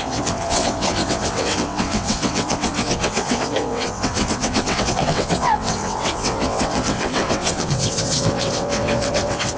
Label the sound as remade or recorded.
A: remade